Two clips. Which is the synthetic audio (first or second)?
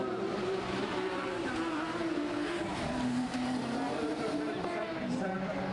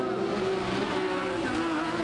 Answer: first